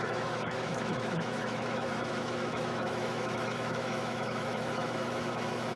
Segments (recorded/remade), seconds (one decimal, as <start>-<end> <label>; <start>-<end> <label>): 0.0-5.8 remade